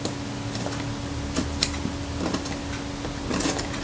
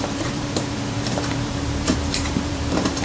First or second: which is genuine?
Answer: first